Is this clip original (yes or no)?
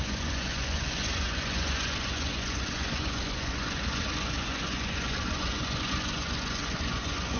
no